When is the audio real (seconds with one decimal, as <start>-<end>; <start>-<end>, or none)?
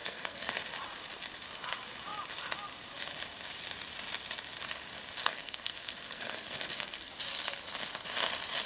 0.5-5.2; 7.1-8.7